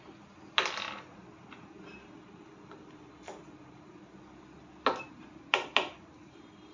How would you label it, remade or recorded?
recorded